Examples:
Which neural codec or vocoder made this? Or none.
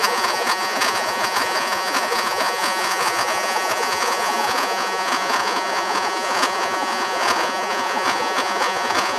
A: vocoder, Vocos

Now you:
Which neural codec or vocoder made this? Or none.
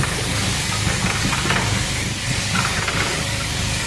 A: codec, DAC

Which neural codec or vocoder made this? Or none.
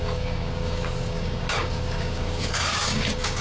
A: codec, DAC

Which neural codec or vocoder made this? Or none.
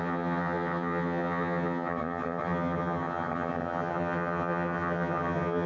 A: vocoder, HiFi-GAN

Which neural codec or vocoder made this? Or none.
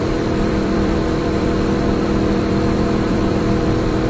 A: vocoder, BigVGAN v2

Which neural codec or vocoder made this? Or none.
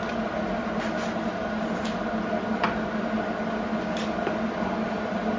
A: none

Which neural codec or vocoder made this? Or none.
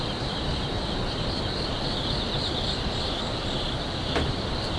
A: vocoder, BigVGAN v2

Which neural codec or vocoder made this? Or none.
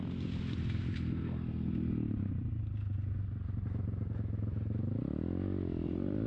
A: none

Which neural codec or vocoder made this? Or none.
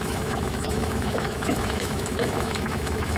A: autoencoder, DAC-VAE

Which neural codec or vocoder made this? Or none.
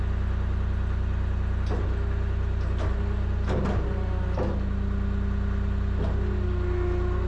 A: none